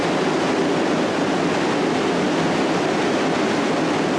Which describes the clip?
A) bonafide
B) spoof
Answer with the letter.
A